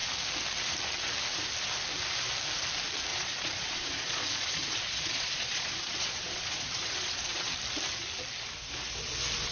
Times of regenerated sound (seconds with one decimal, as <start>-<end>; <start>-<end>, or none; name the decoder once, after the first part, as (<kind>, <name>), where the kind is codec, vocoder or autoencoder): 3.1-7.5 (vocoder, Vocos)